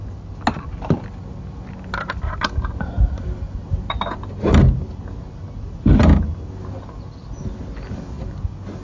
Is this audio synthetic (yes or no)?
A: no